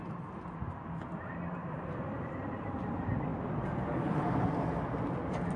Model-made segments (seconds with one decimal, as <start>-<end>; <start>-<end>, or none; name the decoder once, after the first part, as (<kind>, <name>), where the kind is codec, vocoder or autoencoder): none